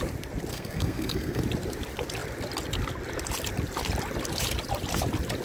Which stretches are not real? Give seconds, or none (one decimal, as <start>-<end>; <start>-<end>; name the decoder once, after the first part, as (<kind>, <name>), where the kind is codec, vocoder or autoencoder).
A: 0.5-1.4 (codec, SNAC)